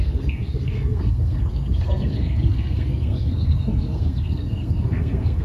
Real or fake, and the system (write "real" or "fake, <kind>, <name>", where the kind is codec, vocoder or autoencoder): fake, codec, SNAC